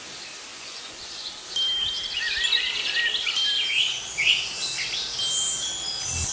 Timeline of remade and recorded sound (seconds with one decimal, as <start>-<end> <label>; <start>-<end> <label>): 0.0-0.5 recorded; 0.5-1.3 remade; 1.3-6.3 recorded